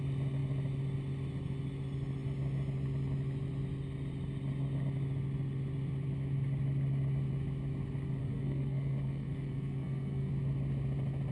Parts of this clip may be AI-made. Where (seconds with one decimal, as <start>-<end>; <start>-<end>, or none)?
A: 8.2-10.3